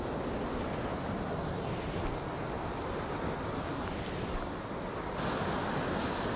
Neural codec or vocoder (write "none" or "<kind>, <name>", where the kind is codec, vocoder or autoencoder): none